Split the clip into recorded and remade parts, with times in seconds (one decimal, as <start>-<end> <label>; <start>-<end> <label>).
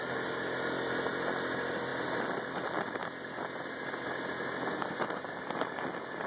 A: 0.0-6.3 recorded